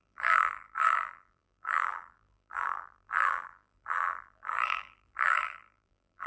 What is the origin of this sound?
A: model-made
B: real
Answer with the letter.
A